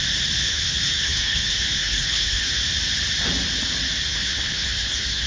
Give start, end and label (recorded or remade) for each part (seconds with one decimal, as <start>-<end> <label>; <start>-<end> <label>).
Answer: 0.0-0.5 recorded; 0.5-2.6 remade; 2.6-4.1 recorded; 4.1-5.3 remade